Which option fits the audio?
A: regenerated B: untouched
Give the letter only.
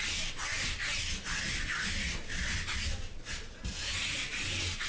B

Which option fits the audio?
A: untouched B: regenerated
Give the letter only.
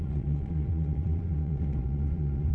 B